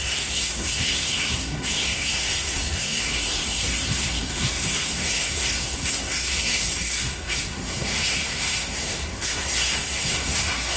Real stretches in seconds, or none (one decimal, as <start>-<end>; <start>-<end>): none

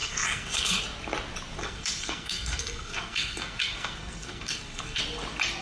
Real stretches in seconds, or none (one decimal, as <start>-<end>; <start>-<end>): 0.8-1.6; 5.0-5.6

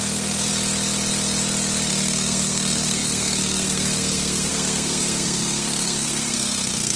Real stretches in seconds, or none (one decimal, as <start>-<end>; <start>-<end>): 0.5-1.9

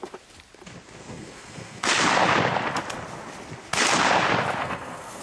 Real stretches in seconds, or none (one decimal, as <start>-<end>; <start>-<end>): 0.0-1.0; 1.9-4.6

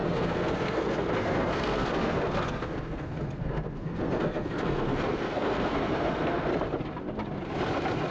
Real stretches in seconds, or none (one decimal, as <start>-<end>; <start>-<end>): 6.5-8.1

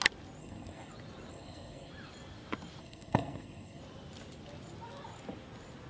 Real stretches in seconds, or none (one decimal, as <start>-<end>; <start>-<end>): 0.0-0.4; 0.9-1.3; 1.9-2.8; 3.8-5.9

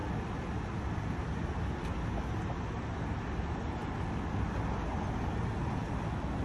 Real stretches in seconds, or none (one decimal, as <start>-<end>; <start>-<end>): 0.0-6.4

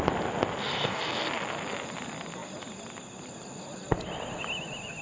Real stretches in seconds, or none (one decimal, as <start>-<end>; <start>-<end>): 0.0-0.6; 1.1-5.0